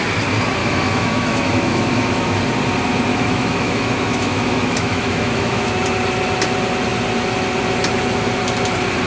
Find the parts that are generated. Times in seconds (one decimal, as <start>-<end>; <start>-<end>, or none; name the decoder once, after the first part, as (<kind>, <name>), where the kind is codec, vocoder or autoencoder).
0.6-2.4 (autoencoder, DAC-VAE); 3.1-5.8